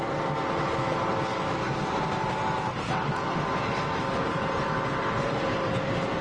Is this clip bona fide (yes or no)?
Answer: yes